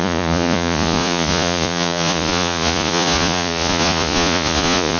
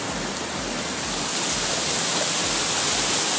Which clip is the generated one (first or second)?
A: first